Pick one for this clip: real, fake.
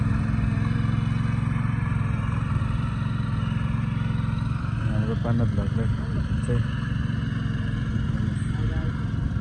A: real